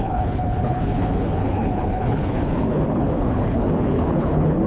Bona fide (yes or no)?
no